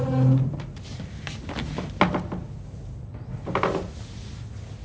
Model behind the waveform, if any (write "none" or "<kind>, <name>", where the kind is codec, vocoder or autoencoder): none